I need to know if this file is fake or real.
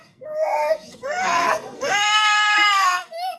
fake